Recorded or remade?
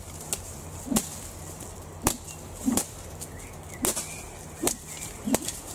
recorded